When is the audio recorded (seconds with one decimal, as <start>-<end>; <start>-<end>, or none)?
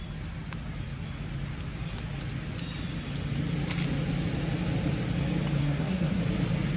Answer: 0.0-5.6; 6.2-6.8